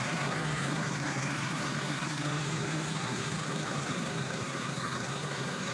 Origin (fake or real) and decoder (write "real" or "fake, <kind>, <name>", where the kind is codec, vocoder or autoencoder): fake, codec, SNAC